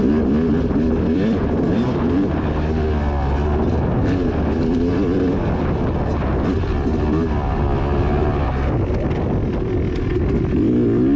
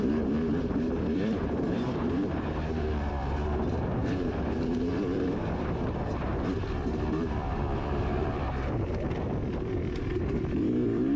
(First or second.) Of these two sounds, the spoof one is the second